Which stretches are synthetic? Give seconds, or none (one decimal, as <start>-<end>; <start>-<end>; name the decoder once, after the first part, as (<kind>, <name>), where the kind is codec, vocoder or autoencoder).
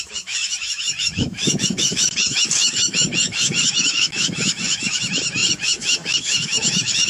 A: 0.0-7.1 (autoencoder, DAC-VAE)